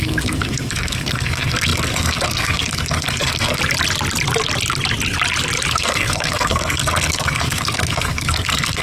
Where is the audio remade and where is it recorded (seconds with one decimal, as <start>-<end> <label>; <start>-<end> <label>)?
0.0-3.6 remade; 3.6-5.7 recorded; 5.7-8.8 remade

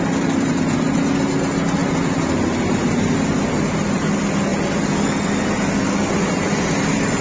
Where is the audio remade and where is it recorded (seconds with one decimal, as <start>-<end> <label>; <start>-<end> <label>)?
0.0-7.2 recorded

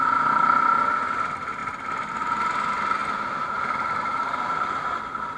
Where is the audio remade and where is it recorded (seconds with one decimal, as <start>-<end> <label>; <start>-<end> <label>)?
0.0-5.4 recorded